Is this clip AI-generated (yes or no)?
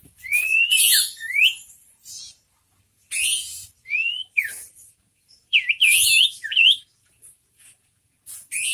yes